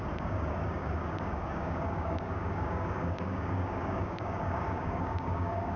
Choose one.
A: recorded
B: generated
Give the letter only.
B